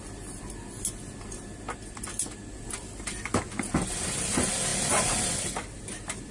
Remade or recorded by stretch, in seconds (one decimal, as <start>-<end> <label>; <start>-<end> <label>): 0.0-6.3 recorded